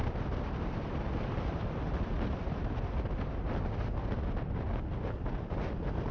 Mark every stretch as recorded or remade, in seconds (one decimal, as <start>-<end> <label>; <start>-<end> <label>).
0.0-6.1 recorded